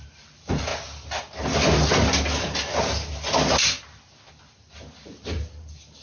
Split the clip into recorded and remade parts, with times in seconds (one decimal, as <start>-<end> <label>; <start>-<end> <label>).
0.0-0.7 remade; 0.7-4.3 recorded; 4.3-6.0 remade